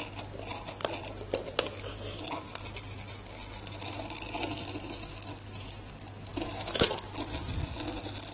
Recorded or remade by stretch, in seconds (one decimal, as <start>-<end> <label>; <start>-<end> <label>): 0.0-6.3 recorded; 6.3-6.9 remade; 6.9-8.3 recorded